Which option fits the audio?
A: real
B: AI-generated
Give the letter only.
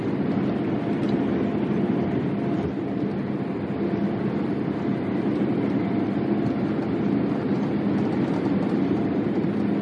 A